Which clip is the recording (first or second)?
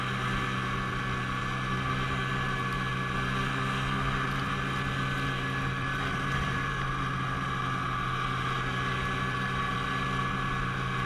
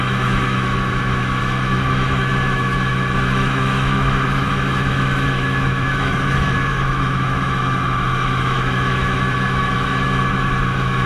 first